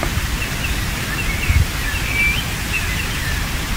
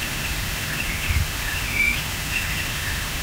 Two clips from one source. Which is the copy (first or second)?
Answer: second